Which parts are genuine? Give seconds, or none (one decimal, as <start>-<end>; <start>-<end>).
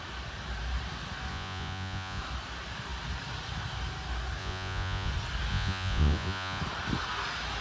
0.0-1.3; 2.2-4.4; 5.1-5.5; 6.6-7.6